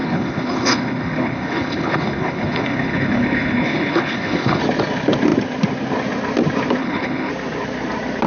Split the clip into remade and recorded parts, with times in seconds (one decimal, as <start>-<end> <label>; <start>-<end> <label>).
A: 0.0-4.6 remade; 4.6-6.8 recorded; 6.8-7.3 remade; 7.3-8.3 recorded